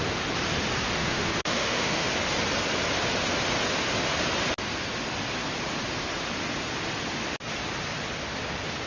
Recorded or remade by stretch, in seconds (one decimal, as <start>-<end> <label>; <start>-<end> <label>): 0.0-1.0 recorded; 1.0-2.1 remade; 2.1-8.9 recorded

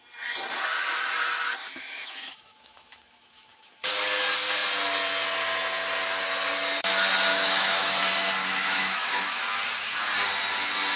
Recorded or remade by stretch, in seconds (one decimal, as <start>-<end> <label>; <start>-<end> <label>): 0.0-1.6 recorded; 1.6-3.9 remade; 3.9-7.3 recorded; 7.3-8.0 remade; 8.0-8.4 recorded; 8.4-9.4 remade; 9.4-11.0 recorded

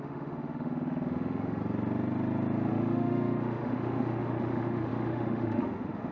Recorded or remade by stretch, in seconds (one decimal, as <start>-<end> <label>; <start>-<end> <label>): 0.0-1.6 remade; 1.6-2.7 recorded; 2.7-6.1 remade

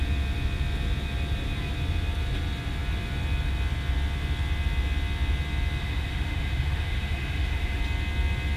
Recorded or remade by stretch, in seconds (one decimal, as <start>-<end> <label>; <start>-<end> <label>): 0.0-5.8 recorded; 5.8-7.8 remade; 7.8-8.6 recorded